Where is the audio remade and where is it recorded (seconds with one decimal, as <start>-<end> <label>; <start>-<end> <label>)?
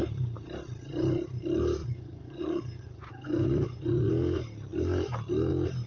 0.0-1.8 recorded; 1.8-4.1 remade; 4.1-5.9 recorded